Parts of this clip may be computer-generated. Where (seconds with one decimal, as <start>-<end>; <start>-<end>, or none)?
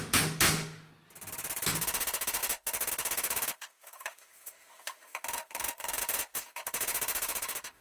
0.0-0.9; 1.8-7.8